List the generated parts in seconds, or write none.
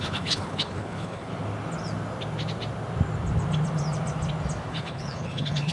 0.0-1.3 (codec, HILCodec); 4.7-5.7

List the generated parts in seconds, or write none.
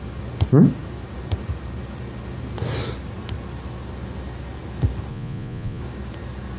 5.1-5.8 (vocoder, Vocos)